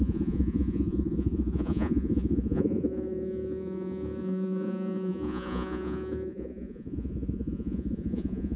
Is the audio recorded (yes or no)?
no